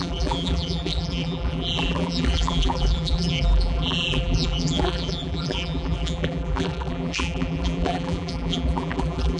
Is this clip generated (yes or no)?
yes